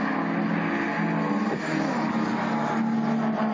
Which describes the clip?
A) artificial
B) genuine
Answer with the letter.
B